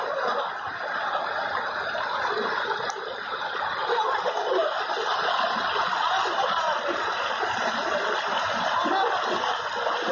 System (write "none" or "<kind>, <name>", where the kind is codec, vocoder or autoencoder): none